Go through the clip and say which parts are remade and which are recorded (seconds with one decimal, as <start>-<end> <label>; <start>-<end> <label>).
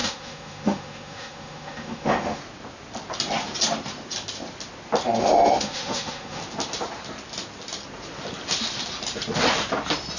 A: 0.0-2.4 remade; 2.4-5.2 recorded; 5.2-6.4 remade; 6.4-10.2 recorded